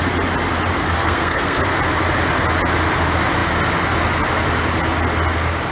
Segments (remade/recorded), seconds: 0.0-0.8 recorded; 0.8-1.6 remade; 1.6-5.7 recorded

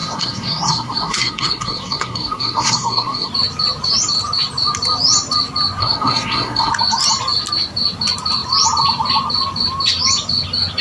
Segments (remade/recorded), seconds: 0.0-3.3 remade; 3.3-5.8 recorded; 5.8-6.7 remade; 6.7-10.8 recorded

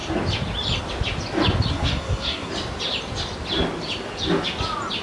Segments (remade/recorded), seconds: 0.0-1.7 recorded; 1.7-2.5 remade; 2.5-5.0 recorded

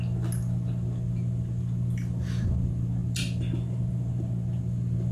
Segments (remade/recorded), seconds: 0.0-5.1 recorded

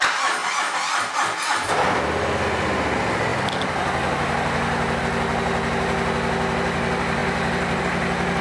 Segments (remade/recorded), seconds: 0.0-8.4 recorded